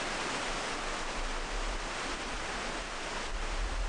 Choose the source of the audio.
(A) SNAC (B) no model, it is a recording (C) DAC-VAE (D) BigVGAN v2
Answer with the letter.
B